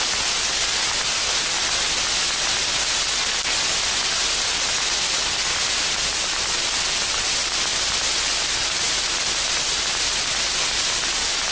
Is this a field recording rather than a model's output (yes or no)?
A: yes